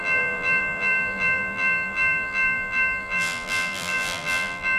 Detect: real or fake fake